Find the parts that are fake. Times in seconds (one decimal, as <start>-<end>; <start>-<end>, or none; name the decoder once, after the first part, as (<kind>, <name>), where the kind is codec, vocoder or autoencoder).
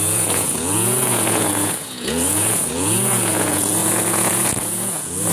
0.0-5.3 (vocoder, Vocos)